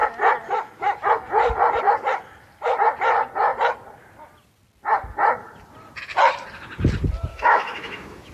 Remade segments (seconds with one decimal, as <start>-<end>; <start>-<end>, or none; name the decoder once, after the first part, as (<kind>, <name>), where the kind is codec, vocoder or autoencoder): 7.3-8.3 (autoencoder, DAC-VAE)

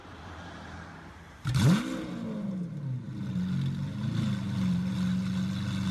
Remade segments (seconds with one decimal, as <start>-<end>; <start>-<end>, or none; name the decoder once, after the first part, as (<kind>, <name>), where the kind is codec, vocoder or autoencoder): 0.0-1.8 (vocoder, BigVGAN v2)

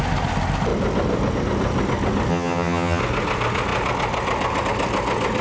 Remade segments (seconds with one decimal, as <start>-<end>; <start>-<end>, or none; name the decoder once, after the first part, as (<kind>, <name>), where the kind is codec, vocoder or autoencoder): 2.3-3.0 (vocoder, HiFi-GAN)